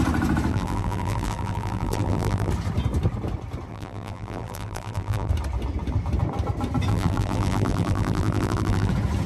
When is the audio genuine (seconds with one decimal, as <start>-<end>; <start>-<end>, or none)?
0.0-0.5; 2.5-3.7; 5.3-6.9; 8.9-9.3